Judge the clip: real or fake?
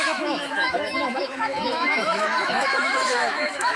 fake